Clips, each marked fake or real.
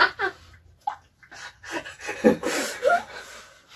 real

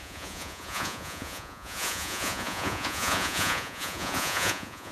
fake